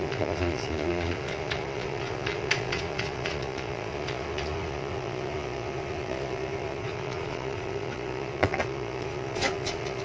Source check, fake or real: fake